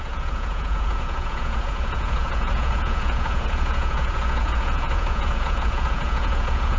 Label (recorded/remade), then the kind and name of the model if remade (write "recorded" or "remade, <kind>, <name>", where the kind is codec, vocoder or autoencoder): remade, vocoder, Vocos